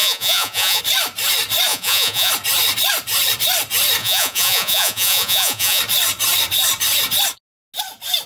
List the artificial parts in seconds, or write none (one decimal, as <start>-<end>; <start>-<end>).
0.0-0.8; 1.7-2.3; 4.0-5.8